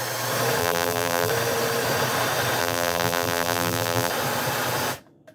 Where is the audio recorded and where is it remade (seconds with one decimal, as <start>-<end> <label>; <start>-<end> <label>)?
0.0-0.6 recorded; 0.6-1.3 remade; 1.3-2.6 recorded; 2.6-4.1 remade; 4.1-5.3 recorded